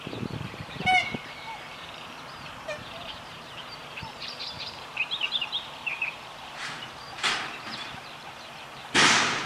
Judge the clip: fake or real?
fake